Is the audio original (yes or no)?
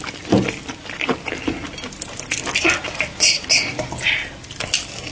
yes